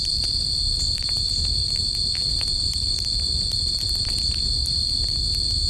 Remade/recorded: remade